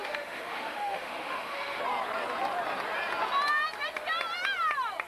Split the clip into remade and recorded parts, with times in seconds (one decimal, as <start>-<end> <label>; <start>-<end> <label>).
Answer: 0.0-1.8 remade; 1.8-5.1 recorded